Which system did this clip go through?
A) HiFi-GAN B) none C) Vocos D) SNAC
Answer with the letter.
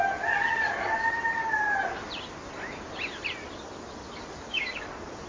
B